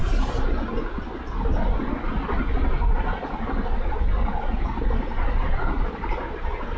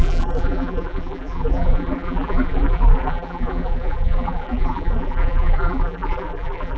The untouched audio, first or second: first